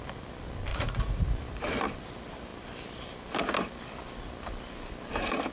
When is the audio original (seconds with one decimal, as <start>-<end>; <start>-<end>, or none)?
0.0-0.7; 1.2-5.5